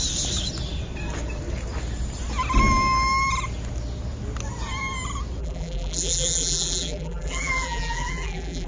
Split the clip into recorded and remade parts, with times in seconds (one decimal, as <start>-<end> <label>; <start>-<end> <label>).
0.0-5.4 recorded; 5.4-8.7 remade